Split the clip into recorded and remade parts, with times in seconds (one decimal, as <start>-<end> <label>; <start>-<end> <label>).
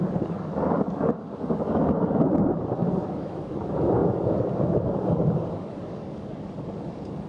0.0-7.3 remade